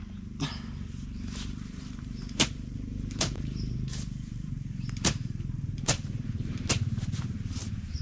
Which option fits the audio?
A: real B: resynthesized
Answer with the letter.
B